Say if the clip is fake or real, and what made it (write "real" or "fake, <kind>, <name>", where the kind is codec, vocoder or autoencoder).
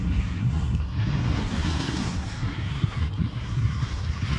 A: fake, codec, SNAC